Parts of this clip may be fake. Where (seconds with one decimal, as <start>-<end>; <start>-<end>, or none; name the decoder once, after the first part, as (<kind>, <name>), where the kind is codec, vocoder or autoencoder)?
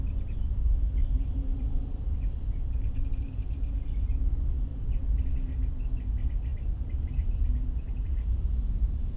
1.0-4.1 (vocoder, BigVGAN v2); 6.5-9.2